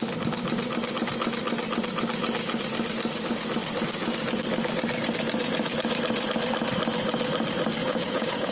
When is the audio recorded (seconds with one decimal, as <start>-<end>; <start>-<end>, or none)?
0.0-7.8